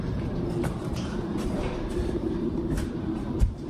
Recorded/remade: remade